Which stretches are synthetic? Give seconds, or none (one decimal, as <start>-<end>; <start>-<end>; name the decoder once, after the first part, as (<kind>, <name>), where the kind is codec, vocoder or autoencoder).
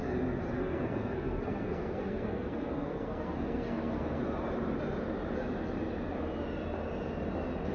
0.6-4.2 (codec, SNAC)